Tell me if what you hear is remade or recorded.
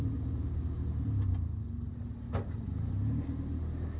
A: recorded